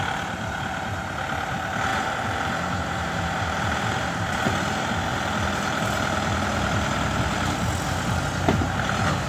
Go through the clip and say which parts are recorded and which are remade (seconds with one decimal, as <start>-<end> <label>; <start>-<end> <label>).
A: 0.0-1.9 recorded; 1.9-4.3 remade; 4.3-9.3 recorded